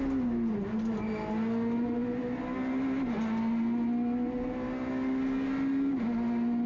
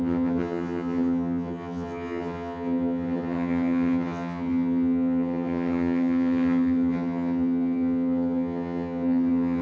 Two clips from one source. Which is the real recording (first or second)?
first